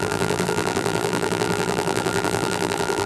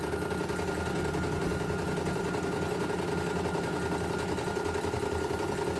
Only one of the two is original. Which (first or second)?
second